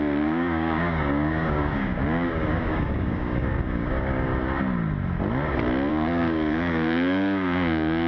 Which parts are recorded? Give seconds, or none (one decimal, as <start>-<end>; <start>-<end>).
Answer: 4.3-5.9